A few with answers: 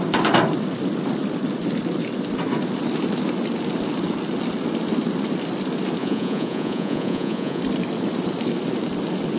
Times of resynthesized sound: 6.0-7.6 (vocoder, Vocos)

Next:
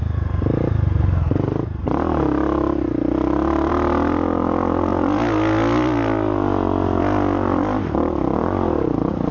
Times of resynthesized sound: none

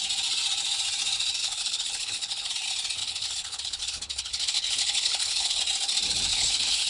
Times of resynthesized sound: 1.4-2.5 (codec, HILCodec); 3.0-5.6; 6.3-6.9